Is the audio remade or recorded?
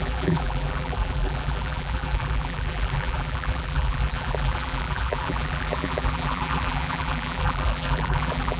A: remade